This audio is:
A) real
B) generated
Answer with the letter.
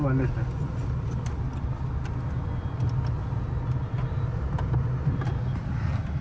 A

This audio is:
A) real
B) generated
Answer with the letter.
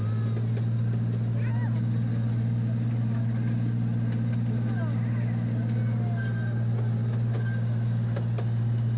A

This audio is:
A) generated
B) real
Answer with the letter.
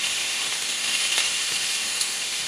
A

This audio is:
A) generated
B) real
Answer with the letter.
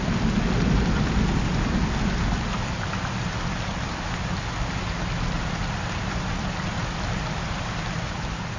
B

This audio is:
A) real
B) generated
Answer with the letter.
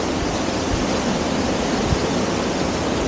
A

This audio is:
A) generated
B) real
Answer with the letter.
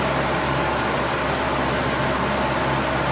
B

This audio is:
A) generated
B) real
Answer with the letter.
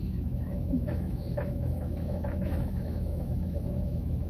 A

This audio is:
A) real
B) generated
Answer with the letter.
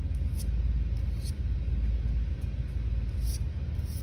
A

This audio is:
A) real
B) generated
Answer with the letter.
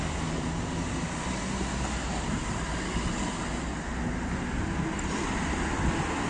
A